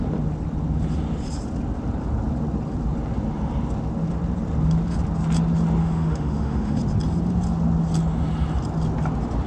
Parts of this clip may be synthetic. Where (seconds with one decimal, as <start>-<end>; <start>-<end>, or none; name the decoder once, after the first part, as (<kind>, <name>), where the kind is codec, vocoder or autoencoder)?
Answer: 5.8-6.8 (autoencoder, DAC-VAE)